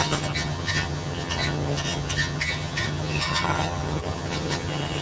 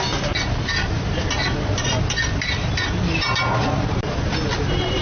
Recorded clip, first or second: second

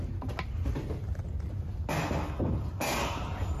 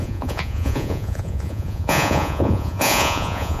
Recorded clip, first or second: first